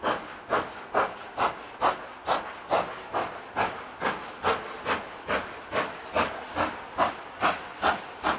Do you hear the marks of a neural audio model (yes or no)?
no